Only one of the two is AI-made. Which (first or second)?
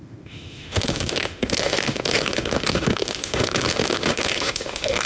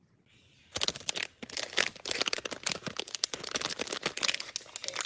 first